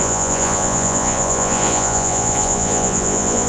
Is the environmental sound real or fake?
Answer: fake